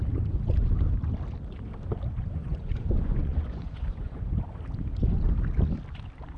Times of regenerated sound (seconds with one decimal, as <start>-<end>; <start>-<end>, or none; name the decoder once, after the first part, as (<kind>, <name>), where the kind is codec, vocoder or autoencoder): 2.4-4.4 (vocoder, Vocos)